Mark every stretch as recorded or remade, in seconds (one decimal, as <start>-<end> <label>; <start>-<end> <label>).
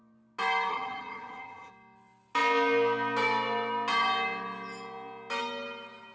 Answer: 0.0-0.7 recorded; 0.7-1.7 remade; 1.7-6.1 recorded